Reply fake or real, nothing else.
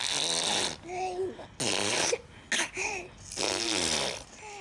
real